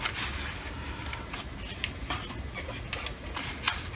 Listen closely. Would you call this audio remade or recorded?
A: recorded